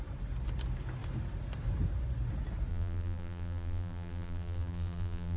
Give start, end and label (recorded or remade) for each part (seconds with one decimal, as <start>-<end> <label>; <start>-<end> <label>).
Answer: 0.0-2.7 recorded; 2.7-5.4 remade

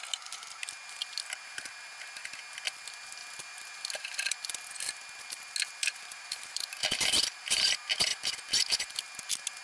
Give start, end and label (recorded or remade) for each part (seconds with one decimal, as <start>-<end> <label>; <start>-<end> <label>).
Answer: 0.0-5.8 recorded; 5.8-7.4 remade; 7.4-9.6 recorded

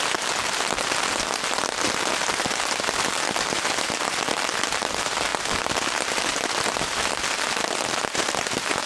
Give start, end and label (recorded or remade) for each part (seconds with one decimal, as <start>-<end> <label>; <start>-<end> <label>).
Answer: 0.0-8.9 recorded